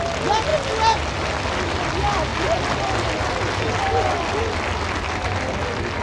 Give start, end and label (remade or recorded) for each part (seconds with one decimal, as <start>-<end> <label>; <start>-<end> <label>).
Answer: 0.0-6.0 recorded